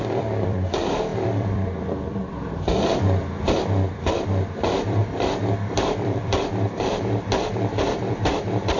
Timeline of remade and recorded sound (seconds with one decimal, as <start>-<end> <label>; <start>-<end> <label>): 0.0-8.8 remade